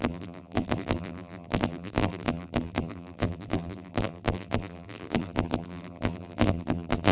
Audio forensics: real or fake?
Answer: fake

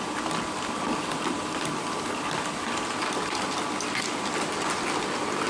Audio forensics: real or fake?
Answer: real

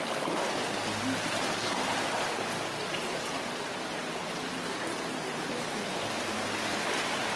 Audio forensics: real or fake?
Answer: real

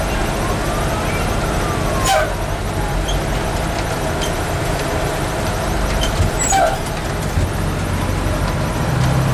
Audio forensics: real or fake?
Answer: real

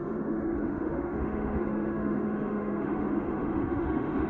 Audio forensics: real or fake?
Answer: fake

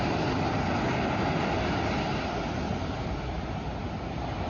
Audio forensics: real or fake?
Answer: real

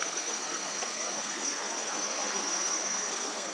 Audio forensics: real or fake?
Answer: fake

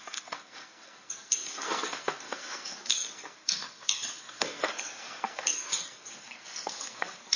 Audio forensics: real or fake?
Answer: fake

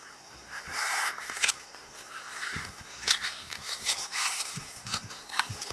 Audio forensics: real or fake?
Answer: fake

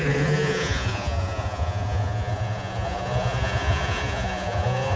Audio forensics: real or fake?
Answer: fake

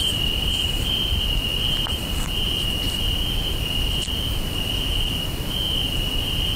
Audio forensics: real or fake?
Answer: real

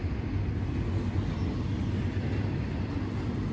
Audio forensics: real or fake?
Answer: real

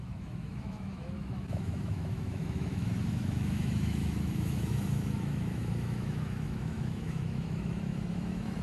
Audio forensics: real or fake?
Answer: fake